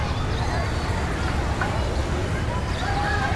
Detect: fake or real real